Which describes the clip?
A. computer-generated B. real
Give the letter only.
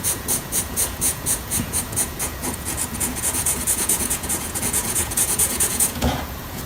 A